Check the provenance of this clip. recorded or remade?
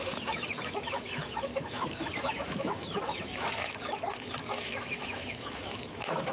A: remade